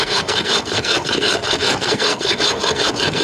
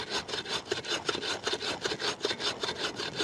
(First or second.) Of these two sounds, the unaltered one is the second